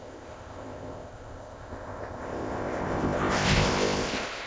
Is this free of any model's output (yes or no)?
no